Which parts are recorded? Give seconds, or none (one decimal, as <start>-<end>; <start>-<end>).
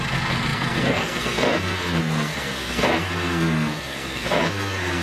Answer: none